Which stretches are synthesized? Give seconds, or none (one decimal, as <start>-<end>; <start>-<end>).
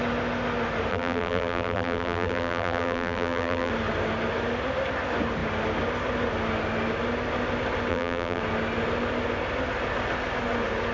0.9-3.7; 7.9-8.4